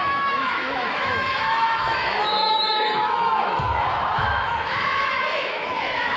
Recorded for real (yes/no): no